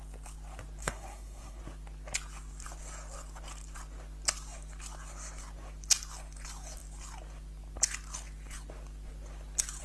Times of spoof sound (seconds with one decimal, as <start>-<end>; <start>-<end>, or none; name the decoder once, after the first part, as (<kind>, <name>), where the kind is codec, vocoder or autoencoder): 0.8-1.6 (codec, SNAC)